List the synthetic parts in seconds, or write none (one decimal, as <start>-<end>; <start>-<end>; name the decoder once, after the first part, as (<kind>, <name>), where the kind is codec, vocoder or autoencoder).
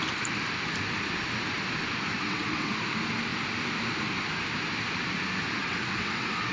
2.2-2.7 (vocoder, WaveNeXt); 5.6-6.5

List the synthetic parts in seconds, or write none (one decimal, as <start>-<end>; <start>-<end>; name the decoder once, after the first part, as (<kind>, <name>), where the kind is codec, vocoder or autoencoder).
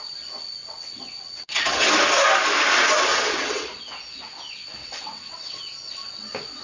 0.6-1.9 (vocoder, WaveNeXt); 3.1-3.7; 4.8-5.6